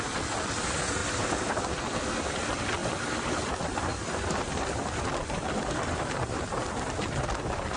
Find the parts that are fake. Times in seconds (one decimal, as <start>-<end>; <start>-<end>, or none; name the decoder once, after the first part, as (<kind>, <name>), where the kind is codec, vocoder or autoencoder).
1.0-1.6 (vocoder, BigVGAN v2); 2.8-7.8